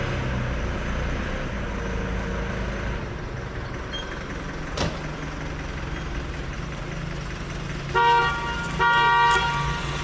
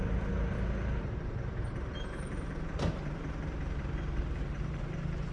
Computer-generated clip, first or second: second